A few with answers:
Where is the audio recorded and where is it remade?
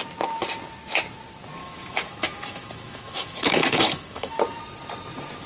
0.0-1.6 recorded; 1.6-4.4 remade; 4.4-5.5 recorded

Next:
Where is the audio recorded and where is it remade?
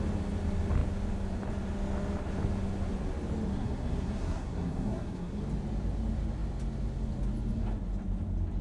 0.0-3.5 recorded; 3.5-5.4 remade; 5.4-8.6 recorded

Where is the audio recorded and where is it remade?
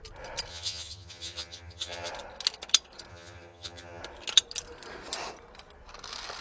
0.0-0.5 recorded; 0.5-2.1 remade; 2.1-3.1 recorded; 3.1-4.0 remade; 4.0-6.4 recorded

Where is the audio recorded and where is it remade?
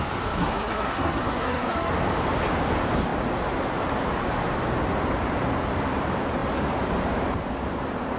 0.0-0.4 recorded; 0.4-1.9 remade; 1.9-8.2 recorded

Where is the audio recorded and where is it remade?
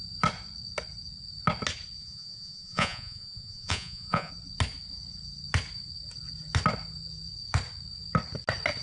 0.0-2.0 recorded; 2.0-4.3 remade; 4.3-8.8 recorded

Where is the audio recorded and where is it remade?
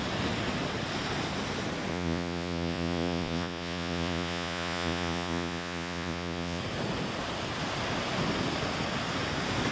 0.0-1.9 recorded; 1.9-6.6 remade; 6.6-9.7 recorded